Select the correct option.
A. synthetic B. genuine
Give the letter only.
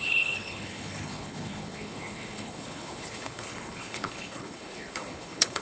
A